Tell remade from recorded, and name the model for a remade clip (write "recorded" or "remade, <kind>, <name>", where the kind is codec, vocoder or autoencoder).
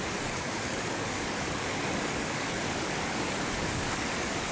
remade, codec, DAC